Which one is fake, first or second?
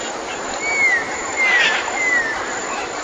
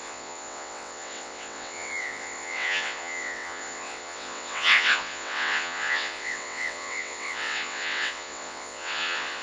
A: second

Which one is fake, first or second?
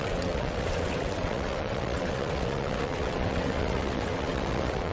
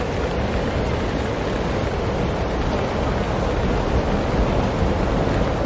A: first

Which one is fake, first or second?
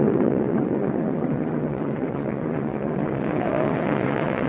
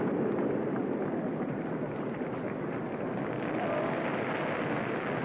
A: first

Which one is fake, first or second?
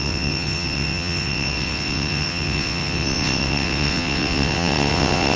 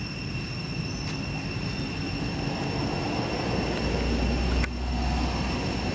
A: first